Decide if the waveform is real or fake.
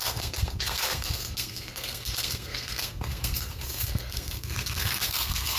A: fake